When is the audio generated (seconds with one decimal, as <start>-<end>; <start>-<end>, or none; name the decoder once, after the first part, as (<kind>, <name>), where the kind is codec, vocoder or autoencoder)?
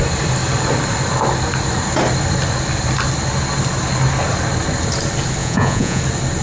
5.4-6.0 (vocoder, Vocos)